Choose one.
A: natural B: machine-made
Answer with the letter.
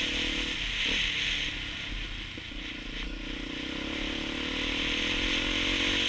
A